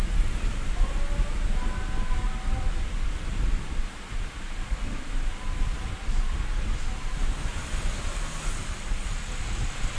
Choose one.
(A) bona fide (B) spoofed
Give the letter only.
A